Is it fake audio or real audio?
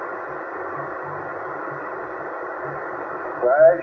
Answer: real